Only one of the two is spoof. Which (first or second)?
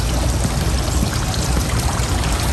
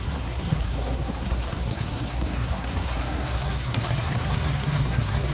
second